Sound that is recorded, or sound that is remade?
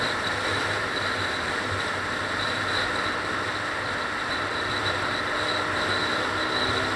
recorded